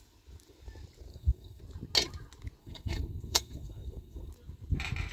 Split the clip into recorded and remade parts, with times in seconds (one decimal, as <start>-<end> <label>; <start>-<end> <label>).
0.0-1.1 recorded; 1.1-1.6 remade; 1.6-2.6 recorded; 2.6-4.3 remade; 4.3-5.1 recorded